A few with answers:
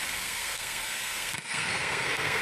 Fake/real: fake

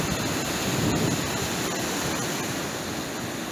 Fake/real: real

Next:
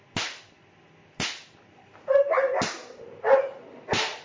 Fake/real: real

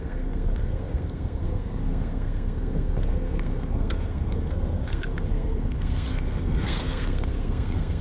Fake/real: fake